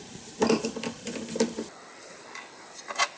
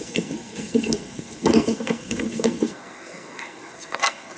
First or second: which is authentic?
first